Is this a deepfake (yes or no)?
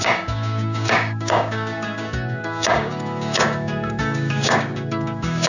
yes